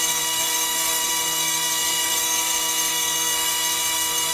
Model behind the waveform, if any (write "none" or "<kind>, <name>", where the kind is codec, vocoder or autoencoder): codec, SNAC